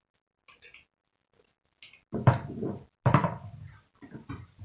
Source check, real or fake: real